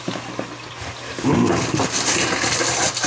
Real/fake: real